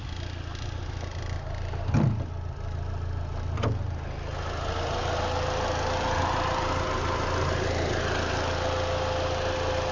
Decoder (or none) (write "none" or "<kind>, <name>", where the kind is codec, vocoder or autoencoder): none